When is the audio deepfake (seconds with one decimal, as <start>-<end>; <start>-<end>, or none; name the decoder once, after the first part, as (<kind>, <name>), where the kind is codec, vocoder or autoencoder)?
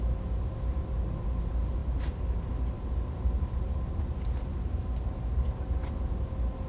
none